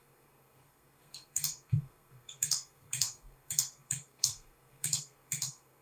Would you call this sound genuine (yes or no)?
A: no